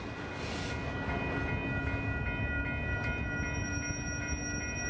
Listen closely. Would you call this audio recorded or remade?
recorded